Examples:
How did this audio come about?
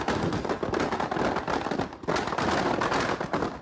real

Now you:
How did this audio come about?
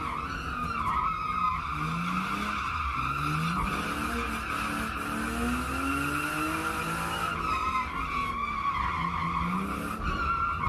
real